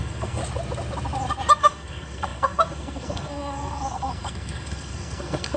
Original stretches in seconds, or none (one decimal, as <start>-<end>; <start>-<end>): 0.4-1.6